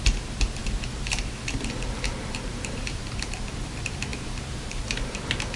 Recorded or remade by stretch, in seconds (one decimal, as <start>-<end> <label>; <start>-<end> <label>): 0.0-5.6 remade